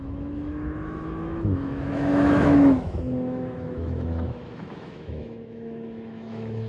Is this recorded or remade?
remade